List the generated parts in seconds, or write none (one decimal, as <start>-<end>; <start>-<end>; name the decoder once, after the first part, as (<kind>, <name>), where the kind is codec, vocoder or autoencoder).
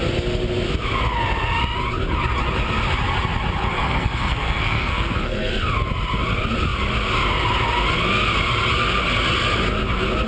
3.7-5.5 (codec, SNAC)